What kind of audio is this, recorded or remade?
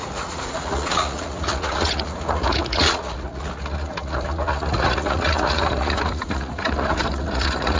remade